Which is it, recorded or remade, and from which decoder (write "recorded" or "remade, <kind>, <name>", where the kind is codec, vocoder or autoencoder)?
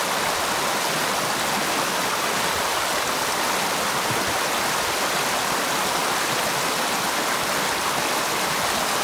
recorded